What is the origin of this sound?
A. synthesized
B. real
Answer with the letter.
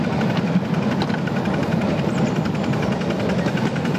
B